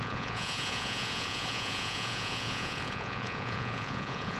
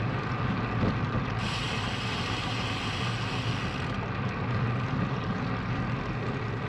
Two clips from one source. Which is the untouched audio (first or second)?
second